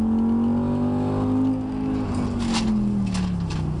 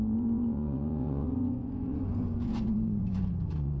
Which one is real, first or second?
first